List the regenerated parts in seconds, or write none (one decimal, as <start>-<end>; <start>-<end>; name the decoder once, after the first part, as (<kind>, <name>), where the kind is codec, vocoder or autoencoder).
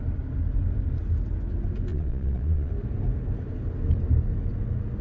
1.9-2.7 (vocoder, Vocos)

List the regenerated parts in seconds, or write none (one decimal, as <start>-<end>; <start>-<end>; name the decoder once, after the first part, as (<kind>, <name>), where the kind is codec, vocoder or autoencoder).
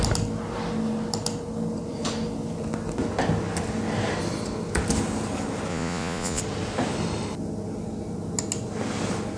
5.7-6.4 (vocoder, Vocos)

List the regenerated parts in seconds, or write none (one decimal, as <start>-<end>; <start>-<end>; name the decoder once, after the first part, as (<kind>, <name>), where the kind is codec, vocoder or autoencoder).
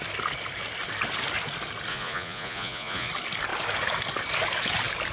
1.9-3.1 (vocoder, Vocos)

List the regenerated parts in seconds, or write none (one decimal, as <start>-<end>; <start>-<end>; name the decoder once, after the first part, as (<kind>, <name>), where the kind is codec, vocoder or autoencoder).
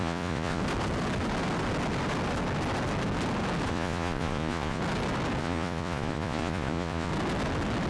0.0-0.6 (vocoder, Vocos); 3.7-4.8; 5.4-7.1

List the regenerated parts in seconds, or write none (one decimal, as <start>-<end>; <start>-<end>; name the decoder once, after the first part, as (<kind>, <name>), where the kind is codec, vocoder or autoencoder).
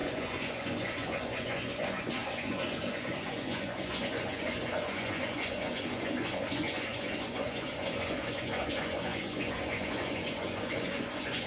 0.0-11.5 (vocoder, Vocos)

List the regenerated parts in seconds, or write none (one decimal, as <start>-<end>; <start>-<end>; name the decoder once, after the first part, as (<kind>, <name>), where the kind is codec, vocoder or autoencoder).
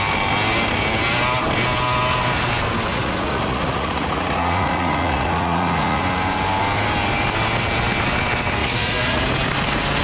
2.9-6.0 (vocoder, Vocos); 8.6-9.2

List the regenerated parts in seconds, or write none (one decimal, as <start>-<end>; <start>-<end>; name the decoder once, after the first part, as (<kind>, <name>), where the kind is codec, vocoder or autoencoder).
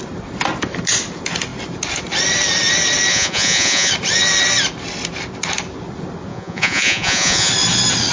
3.1-3.9 (vocoder, Vocos); 6.3-7.5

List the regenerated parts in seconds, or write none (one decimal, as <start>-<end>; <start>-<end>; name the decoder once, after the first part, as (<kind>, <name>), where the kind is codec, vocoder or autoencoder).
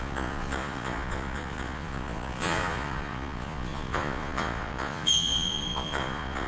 0.0-6.5 (vocoder, Vocos)